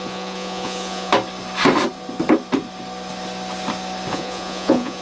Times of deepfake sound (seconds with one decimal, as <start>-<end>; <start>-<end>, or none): 0.0-1.1; 4.1-5.0